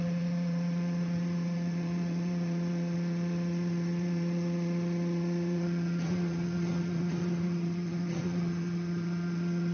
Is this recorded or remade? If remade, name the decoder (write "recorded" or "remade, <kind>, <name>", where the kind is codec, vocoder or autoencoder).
remade, vocoder, Vocos